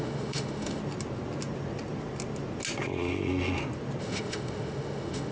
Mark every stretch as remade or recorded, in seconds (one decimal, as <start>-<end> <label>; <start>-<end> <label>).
0.0-0.8 remade; 0.8-4.0 recorded; 4.0-5.3 remade